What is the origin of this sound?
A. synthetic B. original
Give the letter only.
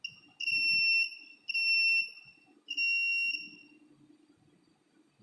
B